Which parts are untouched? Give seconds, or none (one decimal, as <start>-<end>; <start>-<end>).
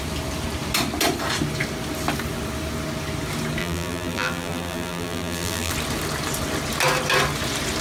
0.0-3.6; 5.7-7.8